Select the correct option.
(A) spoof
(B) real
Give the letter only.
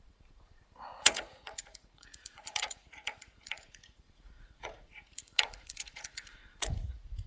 A